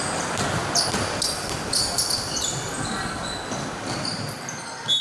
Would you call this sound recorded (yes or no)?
yes